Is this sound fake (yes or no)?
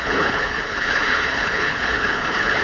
yes